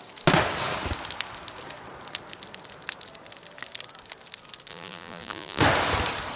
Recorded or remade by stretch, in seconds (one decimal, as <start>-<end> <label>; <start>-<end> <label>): 0.0-4.7 recorded; 4.7-5.6 remade; 5.6-6.4 recorded